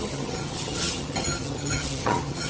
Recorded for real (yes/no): no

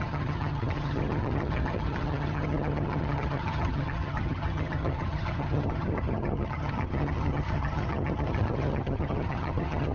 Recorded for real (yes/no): no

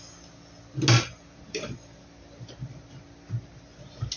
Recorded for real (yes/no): yes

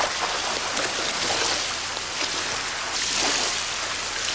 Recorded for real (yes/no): yes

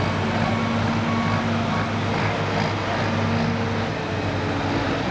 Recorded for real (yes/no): yes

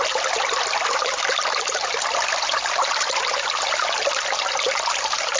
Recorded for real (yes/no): yes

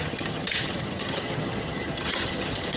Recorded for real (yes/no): no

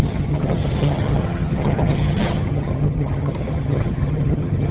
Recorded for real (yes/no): no